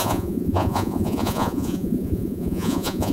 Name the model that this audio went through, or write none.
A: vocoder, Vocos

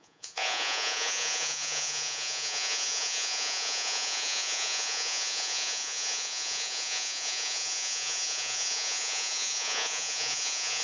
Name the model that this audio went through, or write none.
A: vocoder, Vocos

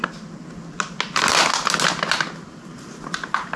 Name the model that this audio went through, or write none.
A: none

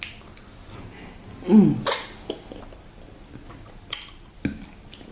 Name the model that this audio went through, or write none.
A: none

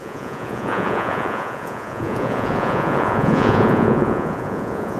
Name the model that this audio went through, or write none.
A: vocoder, Vocos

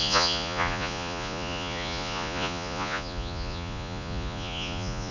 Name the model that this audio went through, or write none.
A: vocoder, Vocos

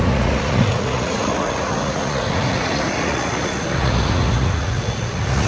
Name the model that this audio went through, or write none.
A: vocoder, Vocos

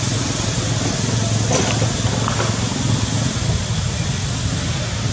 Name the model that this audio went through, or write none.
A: none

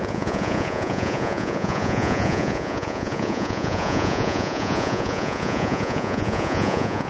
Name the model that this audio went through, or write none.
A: vocoder, Vocos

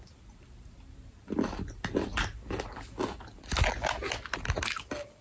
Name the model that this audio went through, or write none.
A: none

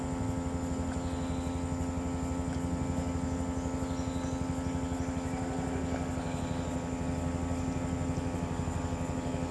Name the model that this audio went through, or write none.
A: none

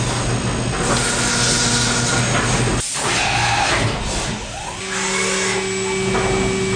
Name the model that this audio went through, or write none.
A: none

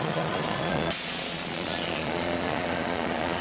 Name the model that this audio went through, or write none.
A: vocoder, Vocos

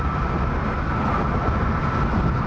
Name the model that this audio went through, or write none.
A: none